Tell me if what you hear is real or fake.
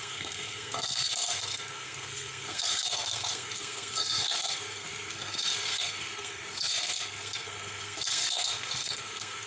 fake